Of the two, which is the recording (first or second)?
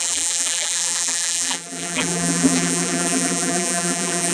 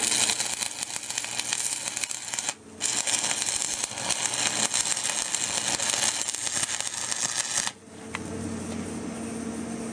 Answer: second